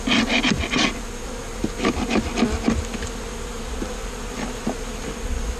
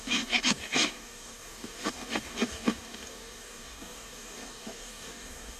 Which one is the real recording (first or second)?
first